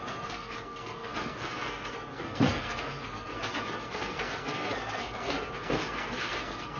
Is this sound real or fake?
fake